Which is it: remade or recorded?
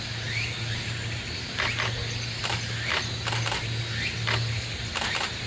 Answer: recorded